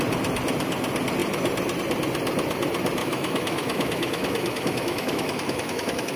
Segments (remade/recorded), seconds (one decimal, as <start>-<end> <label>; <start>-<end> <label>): 0.0-3.0 recorded; 3.0-6.2 remade